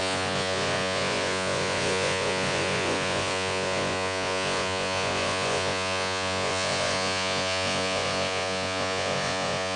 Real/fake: fake